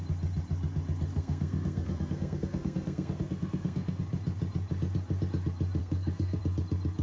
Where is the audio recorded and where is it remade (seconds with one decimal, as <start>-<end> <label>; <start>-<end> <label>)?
0.0-1.1 recorded; 1.1-4.0 remade; 4.0-5.8 recorded; 5.8-6.4 remade; 6.4-7.0 recorded